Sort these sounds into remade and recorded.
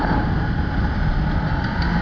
recorded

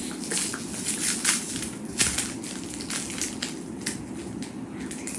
recorded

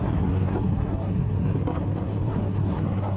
remade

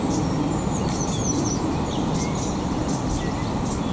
recorded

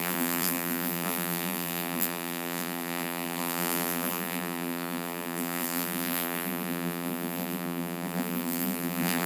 remade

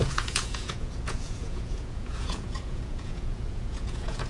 remade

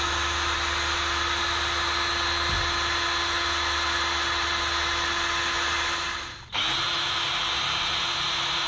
recorded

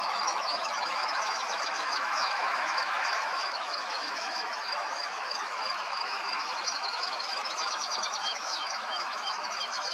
remade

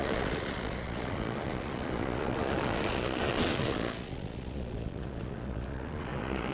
remade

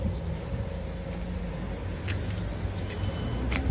recorded